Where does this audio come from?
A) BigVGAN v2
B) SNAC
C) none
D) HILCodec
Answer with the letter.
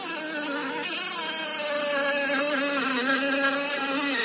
C